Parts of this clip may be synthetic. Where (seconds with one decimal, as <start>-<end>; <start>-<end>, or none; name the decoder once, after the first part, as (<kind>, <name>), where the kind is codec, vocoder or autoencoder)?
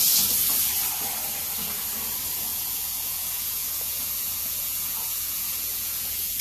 2.5-6.4 (vocoder, Vocos)